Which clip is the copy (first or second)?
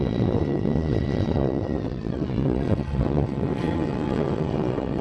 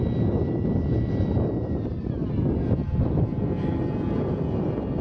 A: first